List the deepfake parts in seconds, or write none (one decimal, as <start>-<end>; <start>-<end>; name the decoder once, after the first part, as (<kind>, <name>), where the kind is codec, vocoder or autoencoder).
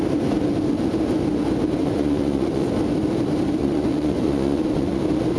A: 1.8-2.7 (vocoder, Vocos); 3.6-5.0